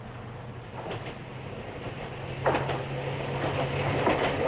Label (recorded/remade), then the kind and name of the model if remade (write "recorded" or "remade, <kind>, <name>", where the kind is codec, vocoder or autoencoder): recorded